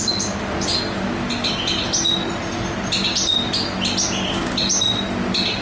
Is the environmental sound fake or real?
real